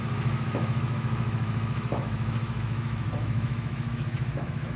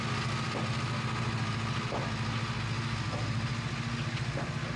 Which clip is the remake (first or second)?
first